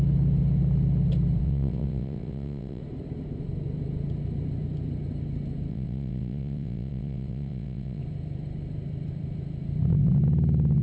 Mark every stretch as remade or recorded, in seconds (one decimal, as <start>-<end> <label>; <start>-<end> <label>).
0.0-1.4 recorded; 1.4-2.8 remade; 2.8-5.7 recorded; 5.7-8.0 remade; 8.0-10.8 recorded